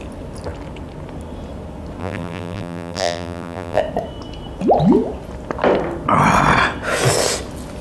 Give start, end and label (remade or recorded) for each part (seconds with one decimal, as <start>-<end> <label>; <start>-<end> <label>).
0.0-2.0 recorded; 2.0-3.8 remade; 3.8-7.8 recorded